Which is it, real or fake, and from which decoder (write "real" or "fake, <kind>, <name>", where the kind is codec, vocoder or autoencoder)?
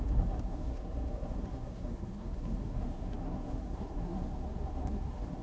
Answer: fake, codec, SNAC